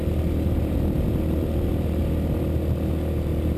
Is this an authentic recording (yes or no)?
yes